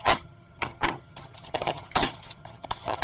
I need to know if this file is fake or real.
fake